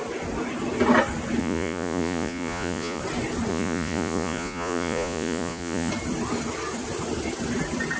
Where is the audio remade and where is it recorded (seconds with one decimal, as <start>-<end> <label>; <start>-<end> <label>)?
0.0-1.4 recorded; 1.4-3.0 remade; 3.0-3.5 recorded; 3.5-5.9 remade; 5.9-8.0 recorded